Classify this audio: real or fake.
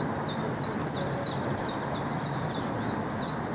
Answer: real